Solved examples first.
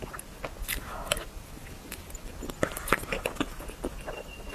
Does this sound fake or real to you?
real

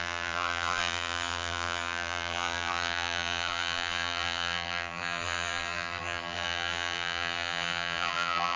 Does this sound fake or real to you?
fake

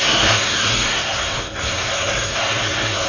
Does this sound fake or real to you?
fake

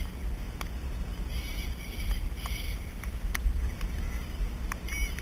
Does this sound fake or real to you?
real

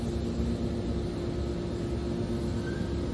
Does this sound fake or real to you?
real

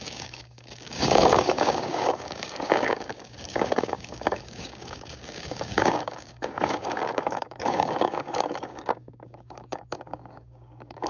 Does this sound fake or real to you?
fake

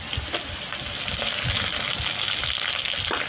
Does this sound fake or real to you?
real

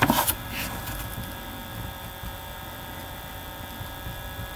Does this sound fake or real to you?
real